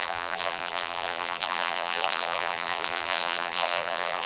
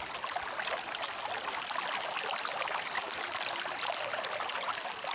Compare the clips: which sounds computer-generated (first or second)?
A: first